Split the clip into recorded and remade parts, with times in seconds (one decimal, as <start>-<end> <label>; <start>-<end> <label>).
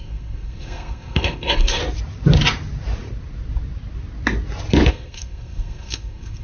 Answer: 0.0-1.8 remade; 1.8-4.9 recorded; 4.9-6.4 remade